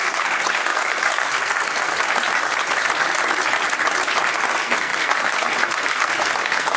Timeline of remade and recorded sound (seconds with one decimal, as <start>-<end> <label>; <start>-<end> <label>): 0.0-1.9 remade; 1.9-4.3 recorded; 4.3-6.8 remade